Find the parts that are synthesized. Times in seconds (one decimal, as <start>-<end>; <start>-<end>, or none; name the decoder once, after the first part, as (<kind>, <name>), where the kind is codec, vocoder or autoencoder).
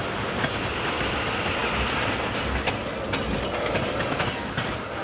none